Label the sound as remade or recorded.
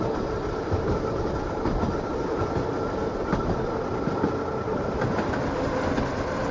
recorded